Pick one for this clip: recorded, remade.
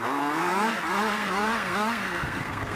remade